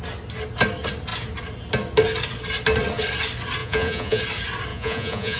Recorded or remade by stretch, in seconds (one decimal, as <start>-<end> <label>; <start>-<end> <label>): 0.0-3.6 recorded; 3.6-4.2 remade; 4.2-4.7 recorded; 4.7-5.4 remade